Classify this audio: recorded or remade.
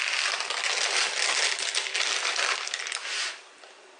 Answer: recorded